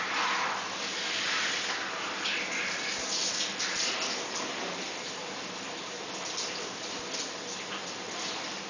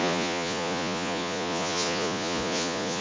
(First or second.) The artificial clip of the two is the second